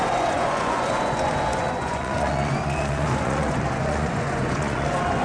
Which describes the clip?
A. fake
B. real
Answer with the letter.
A